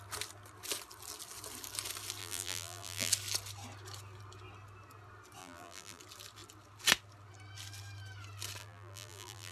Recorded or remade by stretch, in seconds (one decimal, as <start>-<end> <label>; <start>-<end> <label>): 0.0-2.2 recorded; 2.2-3.1 remade; 3.1-5.4 recorded; 5.4-6.0 remade; 6.0-8.6 recorded; 8.6-9.5 remade